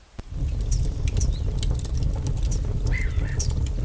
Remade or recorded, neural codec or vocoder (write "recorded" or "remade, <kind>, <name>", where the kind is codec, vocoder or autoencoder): recorded